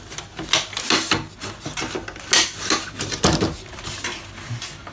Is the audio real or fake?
real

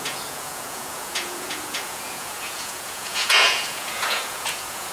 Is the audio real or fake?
fake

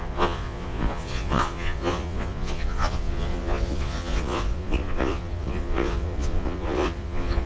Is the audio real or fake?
fake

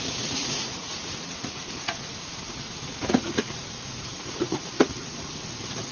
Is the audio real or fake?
fake